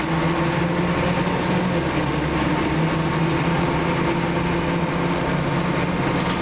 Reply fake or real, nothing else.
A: real